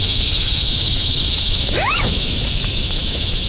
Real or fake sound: fake